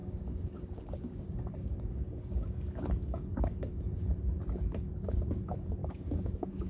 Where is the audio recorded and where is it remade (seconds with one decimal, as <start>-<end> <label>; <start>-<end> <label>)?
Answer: 0.0-4.0 remade; 4.0-5.8 recorded; 5.8-6.7 remade